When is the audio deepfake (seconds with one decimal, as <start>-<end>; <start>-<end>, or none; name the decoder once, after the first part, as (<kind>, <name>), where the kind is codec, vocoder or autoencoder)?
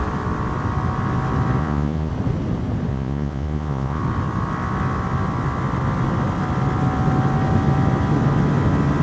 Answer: 1.6-2.1 (vocoder, Vocos); 2.9-4.0